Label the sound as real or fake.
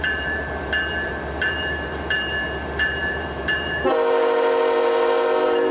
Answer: fake